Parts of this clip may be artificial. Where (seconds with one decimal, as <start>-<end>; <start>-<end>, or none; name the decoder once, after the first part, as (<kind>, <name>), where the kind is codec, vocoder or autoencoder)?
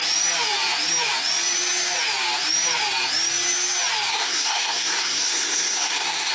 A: 4.1-6.3 (codec, SNAC)